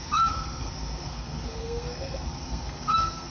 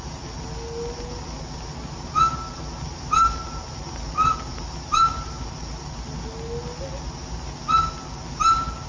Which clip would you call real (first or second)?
second